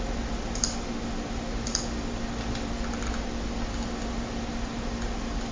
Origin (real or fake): real